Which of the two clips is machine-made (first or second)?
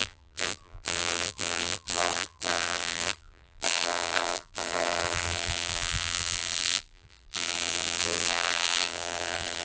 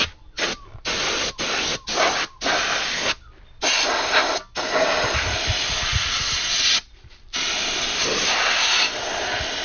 first